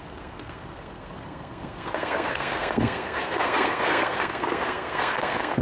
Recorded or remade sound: remade